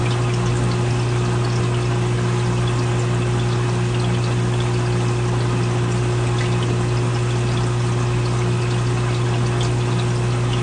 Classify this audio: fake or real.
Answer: real